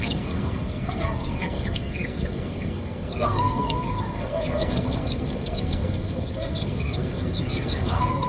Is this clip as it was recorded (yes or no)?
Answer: no